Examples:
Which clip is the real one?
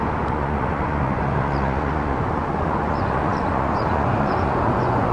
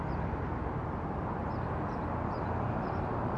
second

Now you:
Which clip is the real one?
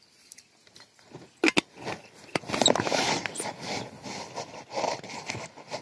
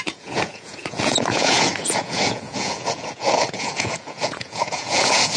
first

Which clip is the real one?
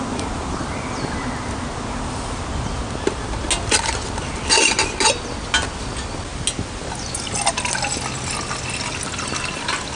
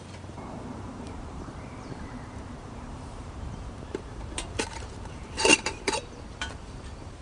first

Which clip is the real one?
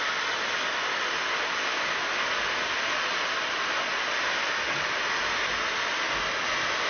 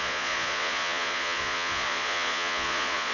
first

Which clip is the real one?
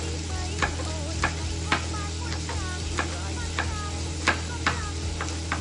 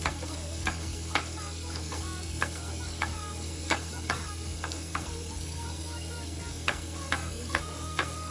first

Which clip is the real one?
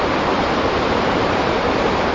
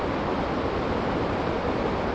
second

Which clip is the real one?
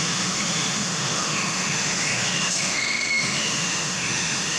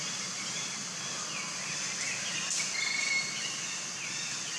second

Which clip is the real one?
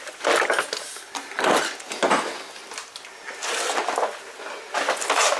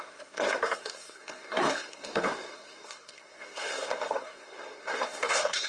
first